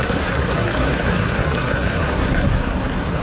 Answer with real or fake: fake